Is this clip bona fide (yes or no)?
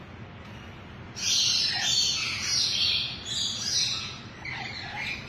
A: yes